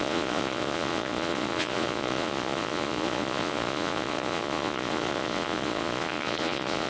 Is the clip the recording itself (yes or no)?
no